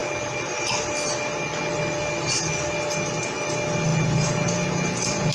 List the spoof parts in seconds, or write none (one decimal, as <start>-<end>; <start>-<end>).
3.9-5.3